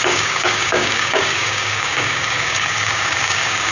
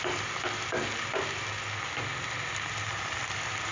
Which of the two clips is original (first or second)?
second